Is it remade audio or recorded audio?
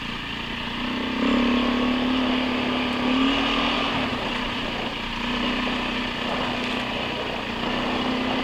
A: recorded